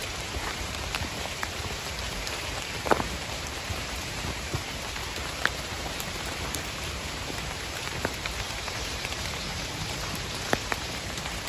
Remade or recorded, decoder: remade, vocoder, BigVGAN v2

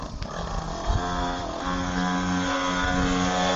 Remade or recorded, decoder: recorded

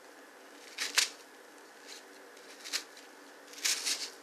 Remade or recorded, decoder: recorded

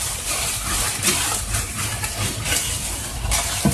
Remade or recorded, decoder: remade, vocoder, BigVGAN v2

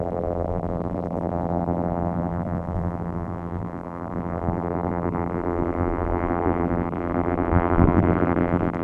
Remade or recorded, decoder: remade, vocoder, BigVGAN v2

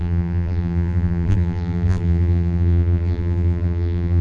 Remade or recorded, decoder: remade, vocoder, BigVGAN v2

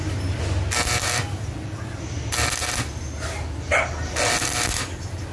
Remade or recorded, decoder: recorded